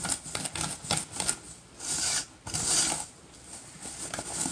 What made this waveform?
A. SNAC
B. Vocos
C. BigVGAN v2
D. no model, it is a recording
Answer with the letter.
D